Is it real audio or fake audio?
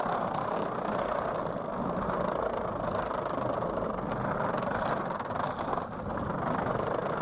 real